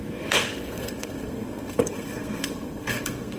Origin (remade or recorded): remade